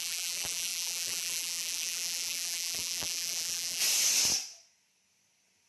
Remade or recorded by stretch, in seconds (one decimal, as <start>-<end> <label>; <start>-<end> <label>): 0.0-3.8 remade; 3.8-5.7 recorded